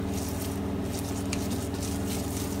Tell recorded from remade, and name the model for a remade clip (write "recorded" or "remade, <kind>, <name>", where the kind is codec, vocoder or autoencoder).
recorded